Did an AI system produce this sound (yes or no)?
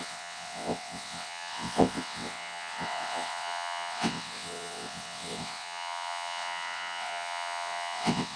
yes